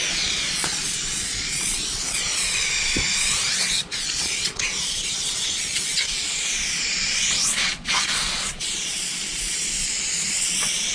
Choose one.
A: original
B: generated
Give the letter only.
B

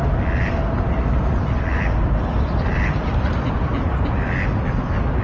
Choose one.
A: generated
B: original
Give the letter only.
B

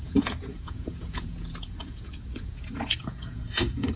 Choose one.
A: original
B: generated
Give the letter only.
B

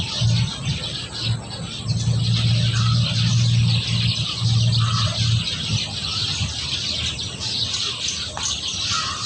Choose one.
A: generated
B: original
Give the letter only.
B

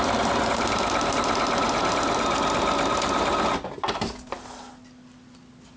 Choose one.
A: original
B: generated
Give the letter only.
A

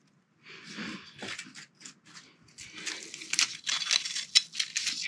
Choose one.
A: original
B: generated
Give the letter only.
A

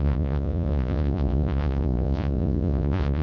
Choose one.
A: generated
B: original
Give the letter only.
A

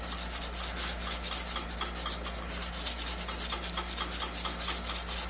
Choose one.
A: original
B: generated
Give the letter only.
A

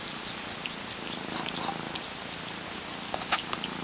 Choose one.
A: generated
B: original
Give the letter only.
B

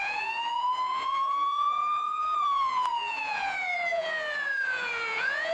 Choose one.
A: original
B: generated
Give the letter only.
B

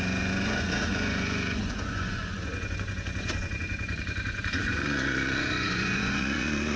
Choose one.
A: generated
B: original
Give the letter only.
A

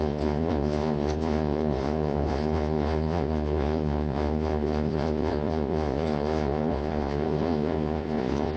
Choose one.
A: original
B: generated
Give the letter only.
B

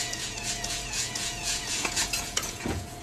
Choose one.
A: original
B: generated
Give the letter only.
B